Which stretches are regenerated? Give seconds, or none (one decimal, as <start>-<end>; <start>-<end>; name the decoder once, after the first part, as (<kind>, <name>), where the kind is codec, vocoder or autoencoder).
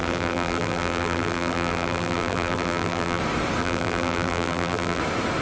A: 0.0-3.2 (vocoder, BigVGAN v2); 3.6-5.0